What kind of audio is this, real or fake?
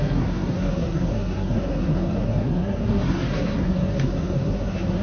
fake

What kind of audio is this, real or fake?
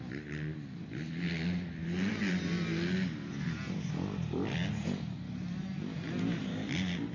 real